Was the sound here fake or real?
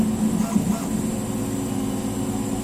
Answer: real